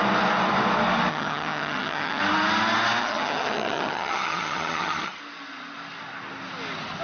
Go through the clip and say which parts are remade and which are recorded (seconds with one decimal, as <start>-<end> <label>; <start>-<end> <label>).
0.0-1.1 recorded; 1.1-2.2 remade; 2.2-3.0 recorded; 3.0-5.2 remade; 5.2-7.0 recorded